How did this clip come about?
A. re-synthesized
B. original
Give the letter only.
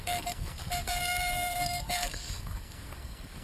A